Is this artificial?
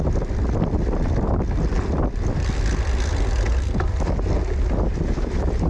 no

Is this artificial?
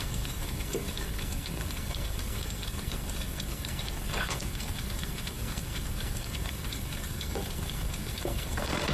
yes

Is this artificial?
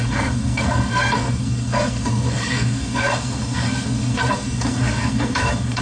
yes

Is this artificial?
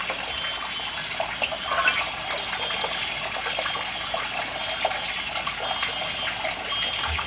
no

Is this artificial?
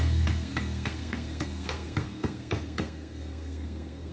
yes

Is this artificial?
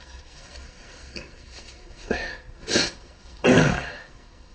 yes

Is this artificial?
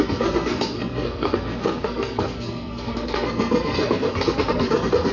yes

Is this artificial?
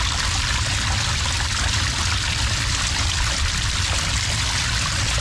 no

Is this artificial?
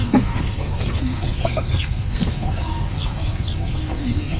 yes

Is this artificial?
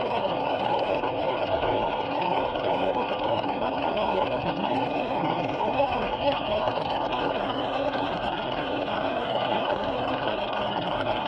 yes